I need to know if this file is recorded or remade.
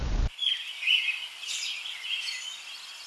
recorded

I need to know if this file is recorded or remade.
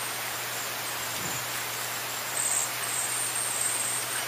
recorded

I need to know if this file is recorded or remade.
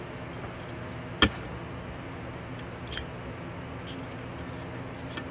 recorded